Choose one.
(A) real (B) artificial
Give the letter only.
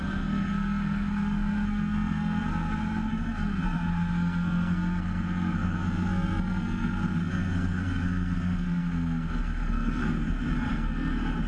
B